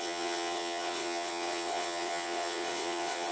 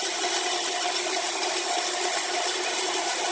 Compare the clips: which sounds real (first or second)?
second